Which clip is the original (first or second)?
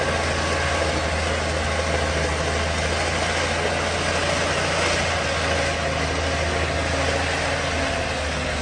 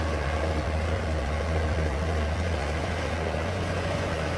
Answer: first